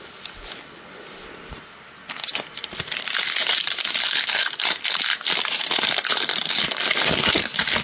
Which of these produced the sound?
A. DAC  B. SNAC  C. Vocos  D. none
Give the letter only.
D